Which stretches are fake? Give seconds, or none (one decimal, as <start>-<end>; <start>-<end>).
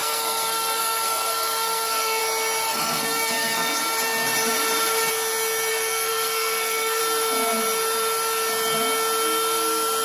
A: 0.0-2.2; 2.7-3.8; 5.7-7.0